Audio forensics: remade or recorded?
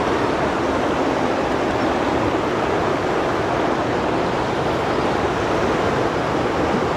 recorded